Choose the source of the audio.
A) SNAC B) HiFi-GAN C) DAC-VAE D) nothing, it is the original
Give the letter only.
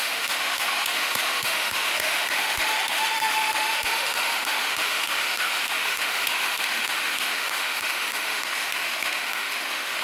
C